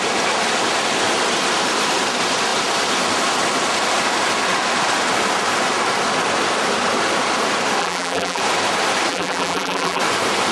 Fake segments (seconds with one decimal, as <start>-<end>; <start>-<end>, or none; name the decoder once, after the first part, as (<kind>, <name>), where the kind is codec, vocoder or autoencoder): 7.8-8.4 (vocoder, BigVGAN v2); 9.1-10.0

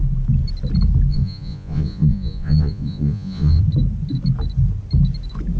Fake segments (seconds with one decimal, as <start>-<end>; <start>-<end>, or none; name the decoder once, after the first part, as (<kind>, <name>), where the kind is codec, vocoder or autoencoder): 1.1-3.6 (vocoder, Vocos)

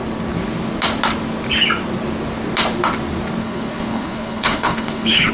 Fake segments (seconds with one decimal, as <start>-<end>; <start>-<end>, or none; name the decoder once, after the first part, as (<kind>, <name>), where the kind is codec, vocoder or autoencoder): 3.4-5.3 (codec, HILCodec)

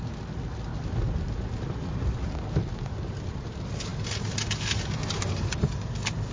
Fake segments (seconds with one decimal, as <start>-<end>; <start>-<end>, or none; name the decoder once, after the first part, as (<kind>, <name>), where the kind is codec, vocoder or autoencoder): none

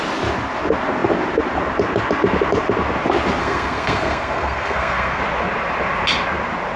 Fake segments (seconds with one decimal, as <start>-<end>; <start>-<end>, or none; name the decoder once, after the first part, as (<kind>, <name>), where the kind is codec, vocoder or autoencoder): 3.4-5.2 (codec, SNAC)

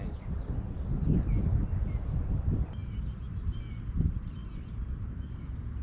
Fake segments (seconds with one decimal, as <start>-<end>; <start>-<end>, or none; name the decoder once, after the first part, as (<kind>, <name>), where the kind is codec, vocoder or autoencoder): none

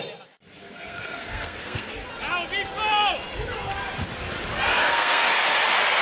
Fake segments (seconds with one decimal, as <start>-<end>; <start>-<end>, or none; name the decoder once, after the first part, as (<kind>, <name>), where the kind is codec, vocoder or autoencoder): 0.6-1.9 (codec, SNAC); 4.8-5.3

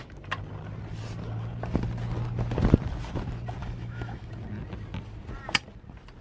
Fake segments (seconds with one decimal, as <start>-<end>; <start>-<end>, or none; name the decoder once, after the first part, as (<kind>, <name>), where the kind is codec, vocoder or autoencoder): 3.6-4.3 (autoencoder, DAC-VAE)